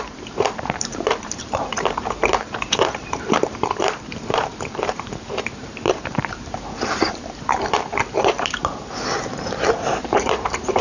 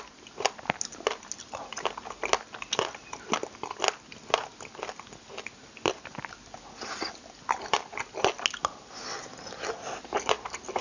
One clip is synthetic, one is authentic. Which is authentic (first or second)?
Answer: second